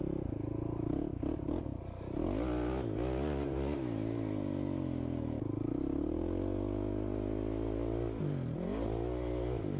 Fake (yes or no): no